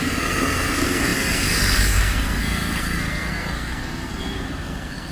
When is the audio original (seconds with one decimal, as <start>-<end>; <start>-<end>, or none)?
none